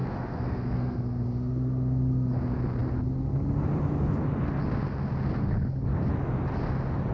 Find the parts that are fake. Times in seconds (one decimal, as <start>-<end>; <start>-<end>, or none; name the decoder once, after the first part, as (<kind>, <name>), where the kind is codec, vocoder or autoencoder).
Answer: 0.0-1.0 (codec, SNAC)